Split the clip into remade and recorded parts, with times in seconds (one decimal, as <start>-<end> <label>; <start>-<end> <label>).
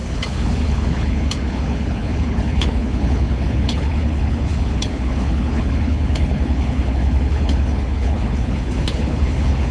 0.0-9.7 remade